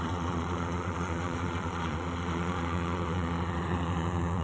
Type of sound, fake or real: fake